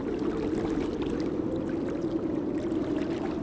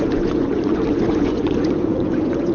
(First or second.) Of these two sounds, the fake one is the second